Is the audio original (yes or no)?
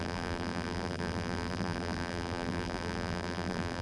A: no